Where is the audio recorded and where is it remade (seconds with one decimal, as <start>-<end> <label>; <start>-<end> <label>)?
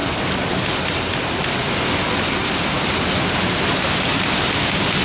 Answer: 0.0-5.0 recorded